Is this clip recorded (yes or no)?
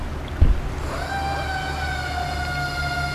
yes